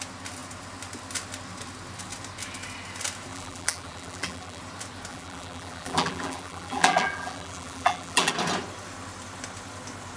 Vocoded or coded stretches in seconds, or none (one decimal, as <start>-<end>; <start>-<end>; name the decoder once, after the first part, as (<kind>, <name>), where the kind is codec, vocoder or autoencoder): 3.3-4.6 (vocoder, BigVGAN v2); 5.1-8.3